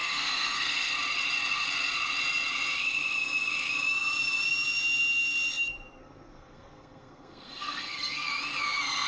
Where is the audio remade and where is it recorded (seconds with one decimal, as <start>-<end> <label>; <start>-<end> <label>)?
0.0-0.9 remade; 0.9-6.0 recorded; 6.0-8.3 remade; 8.3-9.1 recorded